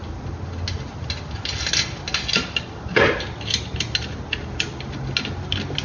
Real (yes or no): yes